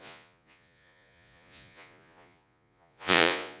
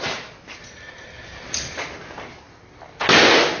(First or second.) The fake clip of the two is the first